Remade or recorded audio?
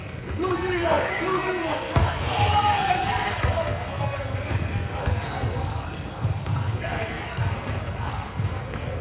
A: remade